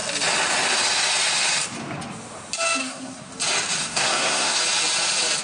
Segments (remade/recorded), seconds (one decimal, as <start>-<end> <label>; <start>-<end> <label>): 0.0-2.8 recorded; 2.8-3.3 remade; 3.3-3.8 recorded; 3.8-4.6 remade; 4.6-5.4 recorded

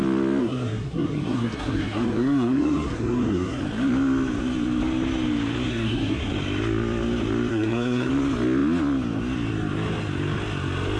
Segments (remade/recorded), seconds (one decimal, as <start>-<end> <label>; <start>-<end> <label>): 0.0-0.4 recorded; 0.4-3.6 remade; 3.6-5.7 recorded; 5.7-6.3 remade; 6.3-7.5 recorded; 7.5-8.1 remade; 8.1-11.0 recorded

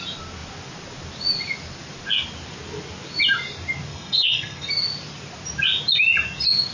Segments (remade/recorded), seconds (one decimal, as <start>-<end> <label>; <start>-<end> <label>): 0.0-3.9 recorded; 3.9-4.7 remade; 4.7-6.7 recorded

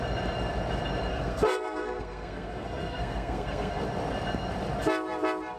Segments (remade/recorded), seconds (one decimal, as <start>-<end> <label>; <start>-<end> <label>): 0.0-1.1 recorded; 1.1-3.8 remade; 3.8-5.6 recorded